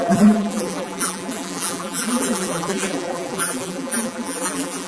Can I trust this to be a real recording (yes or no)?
no